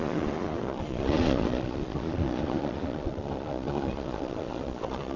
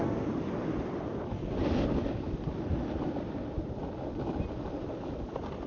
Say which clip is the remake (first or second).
first